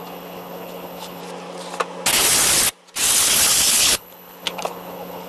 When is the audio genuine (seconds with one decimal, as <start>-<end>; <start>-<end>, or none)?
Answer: 1.2-3.7